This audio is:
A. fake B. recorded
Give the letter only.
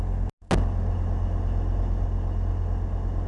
B